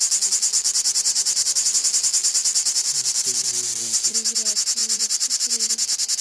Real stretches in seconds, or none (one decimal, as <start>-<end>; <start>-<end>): 0.0-4.8; 5.7-6.2